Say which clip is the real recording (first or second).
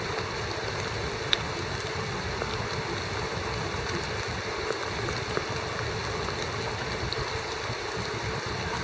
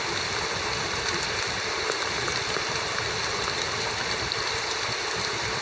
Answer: first